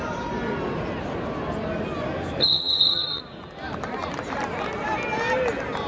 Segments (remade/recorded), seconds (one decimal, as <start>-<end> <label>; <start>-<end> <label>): 0.0-2.4 recorded; 2.4-3.2 remade; 3.2-5.9 recorded